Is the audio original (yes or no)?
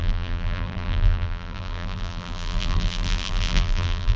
no